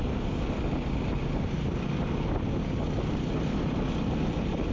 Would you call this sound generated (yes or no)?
no